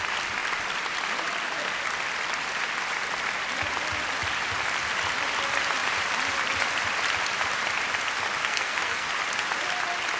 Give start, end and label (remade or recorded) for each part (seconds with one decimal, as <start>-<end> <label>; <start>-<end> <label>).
0.0-8.4 recorded; 8.4-9.1 remade; 9.1-10.2 recorded